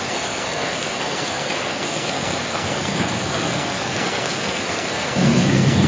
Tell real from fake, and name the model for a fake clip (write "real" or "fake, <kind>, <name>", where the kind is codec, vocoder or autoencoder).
fake, codec, SNAC